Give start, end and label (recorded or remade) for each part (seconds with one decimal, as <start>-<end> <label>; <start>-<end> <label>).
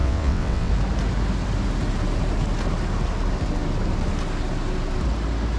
0.0-0.7 remade; 0.7-5.6 recorded